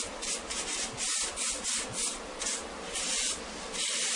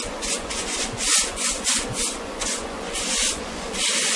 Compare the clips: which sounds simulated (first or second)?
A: second